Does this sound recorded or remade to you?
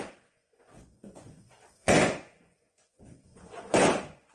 remade